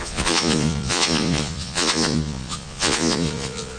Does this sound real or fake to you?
fake